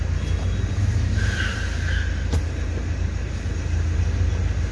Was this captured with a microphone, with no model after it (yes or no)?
yes